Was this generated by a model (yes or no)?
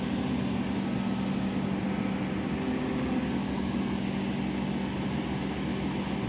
no